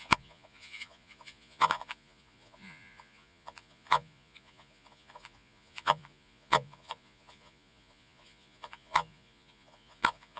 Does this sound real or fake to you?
fake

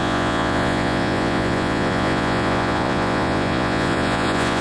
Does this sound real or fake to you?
fake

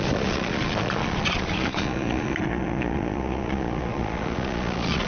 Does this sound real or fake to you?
fake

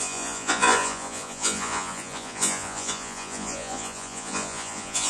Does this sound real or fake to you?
fake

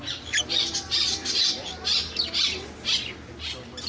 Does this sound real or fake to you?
real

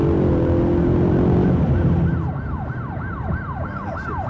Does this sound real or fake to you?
real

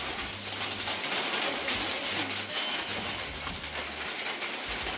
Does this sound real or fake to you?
real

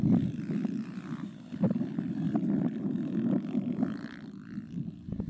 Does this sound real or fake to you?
real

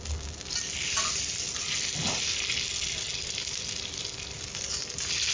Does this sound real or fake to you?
real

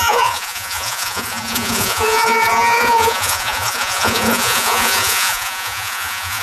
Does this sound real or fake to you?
fake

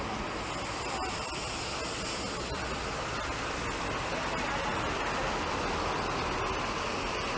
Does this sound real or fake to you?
real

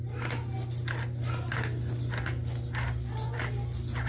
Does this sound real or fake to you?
real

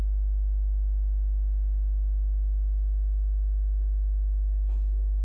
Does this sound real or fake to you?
real